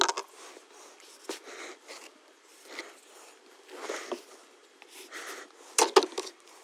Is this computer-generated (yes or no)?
no